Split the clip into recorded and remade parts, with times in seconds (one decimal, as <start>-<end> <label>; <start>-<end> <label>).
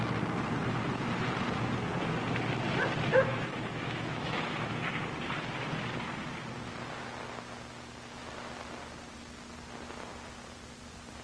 0.0-3.1 recorded; 3.1-4.7 remade; 4.7-11.2 recorded